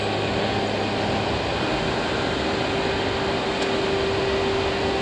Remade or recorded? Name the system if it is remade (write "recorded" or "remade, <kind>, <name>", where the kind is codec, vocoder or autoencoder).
recorded